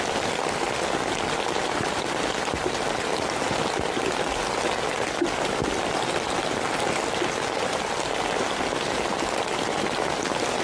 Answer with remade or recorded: recorded